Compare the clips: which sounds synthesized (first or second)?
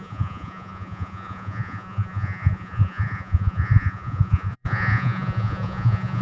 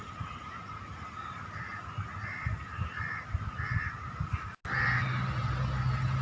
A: first